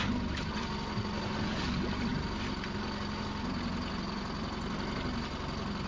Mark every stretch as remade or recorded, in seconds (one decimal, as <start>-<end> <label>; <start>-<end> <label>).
0.0-5.9 recorded